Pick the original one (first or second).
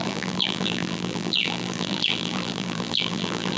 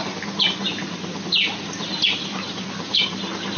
second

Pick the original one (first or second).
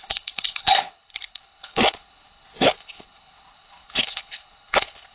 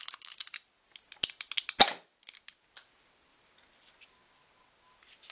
second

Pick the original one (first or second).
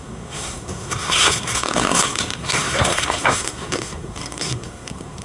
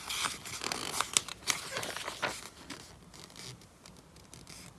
second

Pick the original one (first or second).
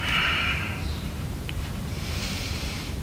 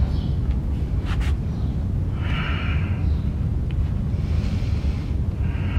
second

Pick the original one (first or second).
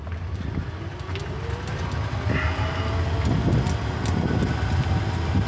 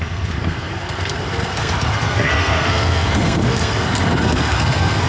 first